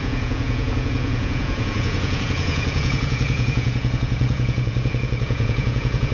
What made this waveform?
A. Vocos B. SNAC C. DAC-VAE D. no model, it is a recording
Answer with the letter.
A